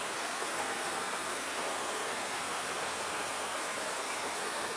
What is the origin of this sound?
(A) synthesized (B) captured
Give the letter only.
A